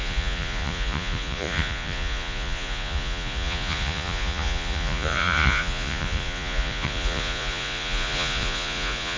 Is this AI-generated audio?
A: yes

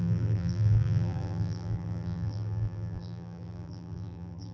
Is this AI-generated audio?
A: yes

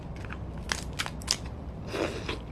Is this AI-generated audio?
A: no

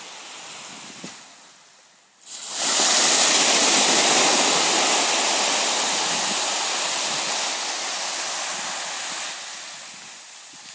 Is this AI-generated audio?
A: no